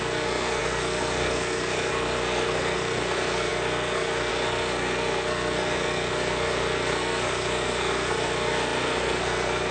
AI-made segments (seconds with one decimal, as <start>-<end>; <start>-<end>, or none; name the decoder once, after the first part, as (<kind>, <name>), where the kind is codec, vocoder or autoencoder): 0.0-9.7 (codec, SNAC)